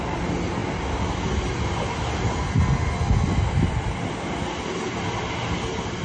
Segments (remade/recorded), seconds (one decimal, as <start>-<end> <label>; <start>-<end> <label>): 0.0-6.0 recorded